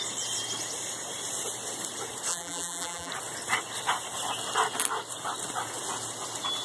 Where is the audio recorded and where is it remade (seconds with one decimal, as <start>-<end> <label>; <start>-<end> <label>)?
0.0-2.3 recorded; 2.3-3.1 remade; 3.1-6.6 recorded